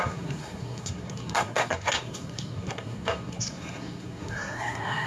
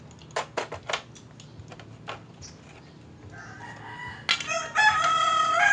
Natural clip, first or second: second